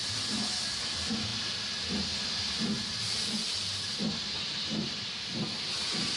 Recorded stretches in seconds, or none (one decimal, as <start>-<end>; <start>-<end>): 0.0-6.2

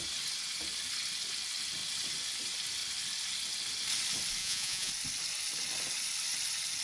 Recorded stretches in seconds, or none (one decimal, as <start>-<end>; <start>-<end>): 0.0-4.4; 4.9-6.8